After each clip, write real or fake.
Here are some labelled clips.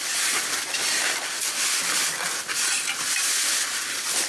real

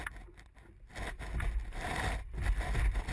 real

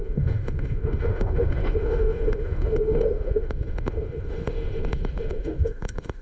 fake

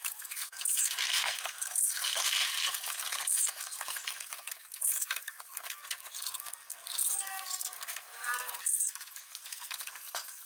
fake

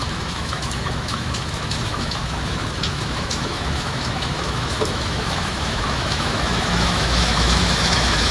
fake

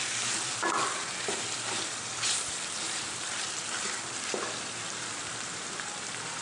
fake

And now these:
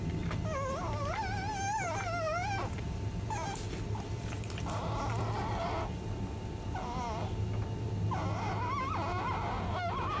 real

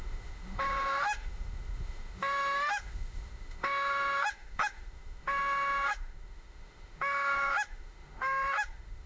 fake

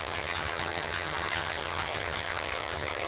fake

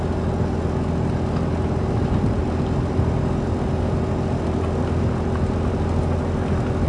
real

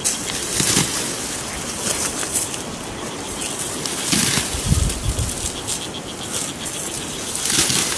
real